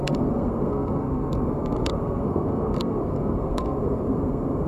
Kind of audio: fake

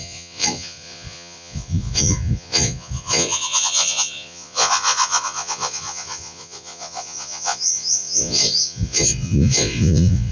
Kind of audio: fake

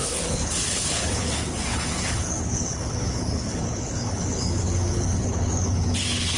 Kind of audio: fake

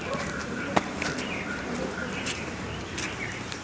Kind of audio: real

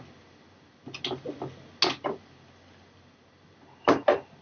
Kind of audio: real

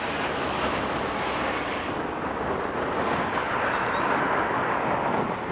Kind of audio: real